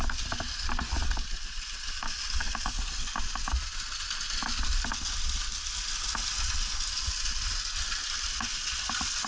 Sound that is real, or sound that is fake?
real